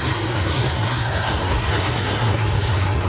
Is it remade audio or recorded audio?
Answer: remade